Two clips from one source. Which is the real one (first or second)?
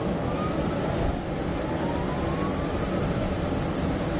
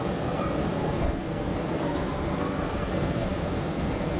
first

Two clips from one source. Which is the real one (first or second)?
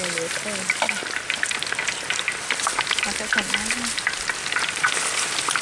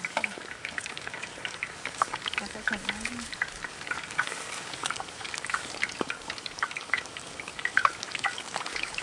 first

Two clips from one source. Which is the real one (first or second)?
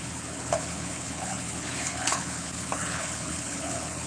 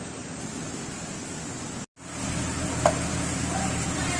second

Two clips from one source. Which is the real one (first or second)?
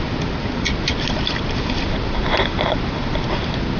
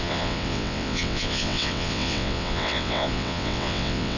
first